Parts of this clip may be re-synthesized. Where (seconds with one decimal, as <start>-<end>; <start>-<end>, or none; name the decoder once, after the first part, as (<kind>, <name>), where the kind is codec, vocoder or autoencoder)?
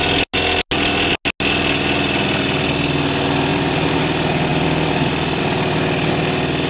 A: 3.5-4.0 (vocoder, BigVGAN v2); 4.5-5.4